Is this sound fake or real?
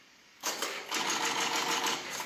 fake